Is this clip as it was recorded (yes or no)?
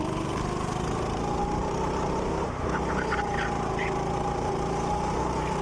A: yes